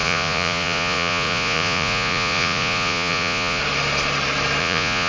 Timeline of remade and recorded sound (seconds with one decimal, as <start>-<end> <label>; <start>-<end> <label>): 0.0-3.6 remade; 3.6-4.6 recorded; 4.6-5.1 remade